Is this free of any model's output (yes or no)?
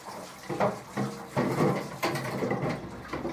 yes